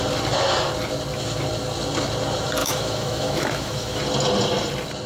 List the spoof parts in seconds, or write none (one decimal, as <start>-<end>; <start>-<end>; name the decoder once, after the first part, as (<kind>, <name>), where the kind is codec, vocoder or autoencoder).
2.6-4.0 (autoencoder, DAC-VAE)